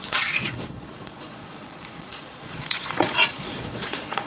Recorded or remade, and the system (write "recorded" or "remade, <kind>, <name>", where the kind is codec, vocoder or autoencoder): remade, vocoder, Vocos